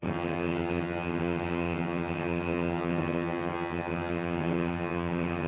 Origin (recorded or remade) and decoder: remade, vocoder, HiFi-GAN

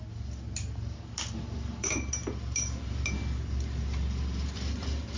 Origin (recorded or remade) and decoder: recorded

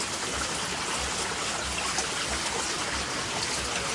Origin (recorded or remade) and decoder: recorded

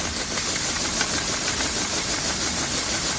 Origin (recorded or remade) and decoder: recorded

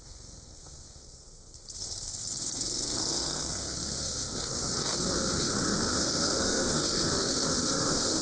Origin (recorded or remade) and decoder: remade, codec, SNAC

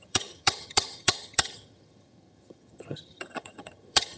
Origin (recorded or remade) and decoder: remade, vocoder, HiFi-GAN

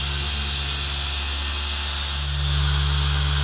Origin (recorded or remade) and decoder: recorded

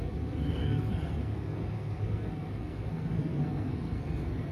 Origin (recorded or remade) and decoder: remade, codec, SNAC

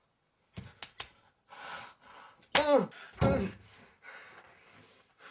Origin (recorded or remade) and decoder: recorded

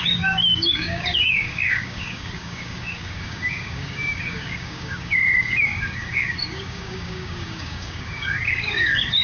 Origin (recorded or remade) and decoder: remade, codec, DAC